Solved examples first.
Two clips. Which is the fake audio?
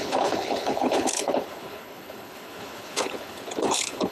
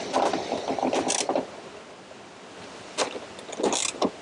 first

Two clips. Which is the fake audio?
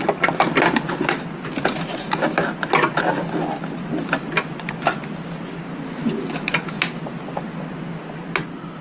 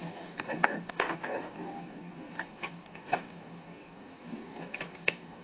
second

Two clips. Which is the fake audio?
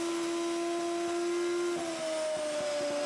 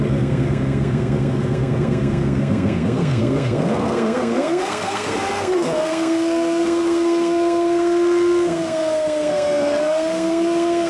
second